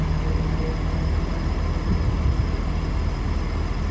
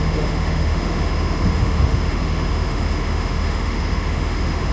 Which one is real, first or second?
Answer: first